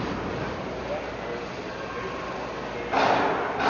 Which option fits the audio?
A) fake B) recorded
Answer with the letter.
B